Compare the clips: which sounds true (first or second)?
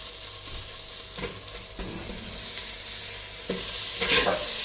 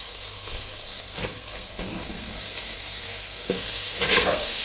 first